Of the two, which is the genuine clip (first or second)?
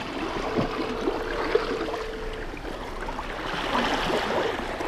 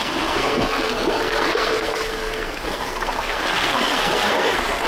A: first